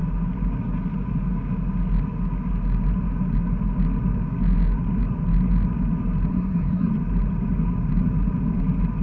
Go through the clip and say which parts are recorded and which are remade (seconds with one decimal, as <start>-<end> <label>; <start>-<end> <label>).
0.0-6.3 recorded; 6.3-6.9 remade; 6.9-9.0 recorded